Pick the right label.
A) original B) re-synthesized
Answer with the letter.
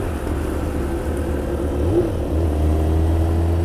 A